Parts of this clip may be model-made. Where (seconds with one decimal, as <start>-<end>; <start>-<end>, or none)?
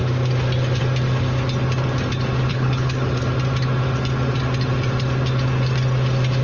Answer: 2.5-3.2